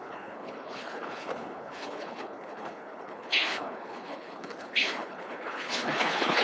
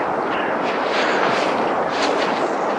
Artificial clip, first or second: first